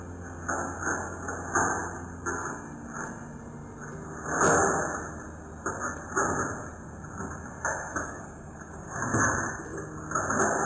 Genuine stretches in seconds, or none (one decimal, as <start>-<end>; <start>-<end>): 0.0-7.9; 9.0-10.7